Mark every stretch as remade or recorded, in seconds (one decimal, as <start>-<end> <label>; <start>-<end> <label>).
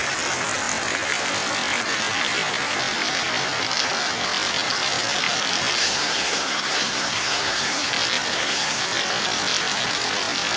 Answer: 0.0-5.8 recorded; 5.8-7.9 remade; 7.9-8.3 recorded; 8.3-8.8 remade; 8.8-10.6 recorded